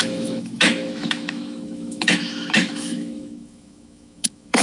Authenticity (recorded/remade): remade